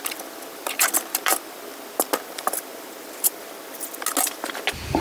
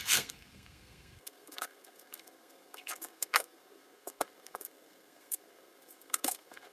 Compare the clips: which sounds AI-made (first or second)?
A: second